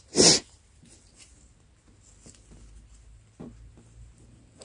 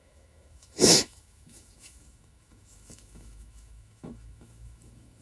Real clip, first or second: first